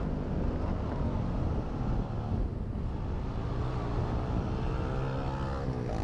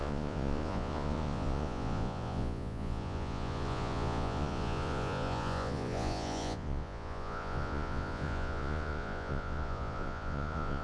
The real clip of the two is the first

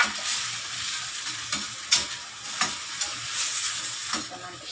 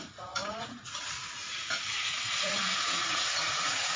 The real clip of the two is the first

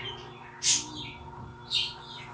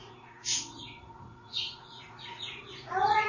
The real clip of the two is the first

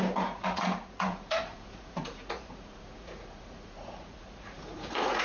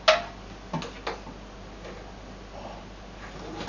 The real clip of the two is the second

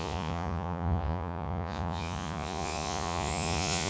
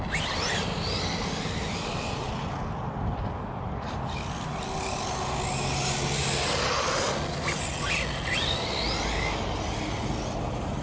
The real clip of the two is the second